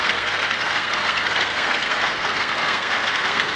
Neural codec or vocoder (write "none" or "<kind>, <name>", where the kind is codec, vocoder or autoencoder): codec, SNAC